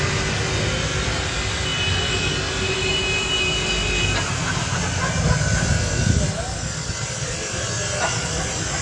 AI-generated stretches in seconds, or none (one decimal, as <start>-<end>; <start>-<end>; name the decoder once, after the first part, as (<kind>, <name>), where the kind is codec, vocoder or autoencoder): none